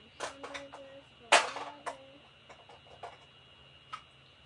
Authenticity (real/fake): real